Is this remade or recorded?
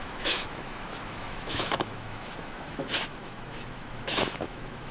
remade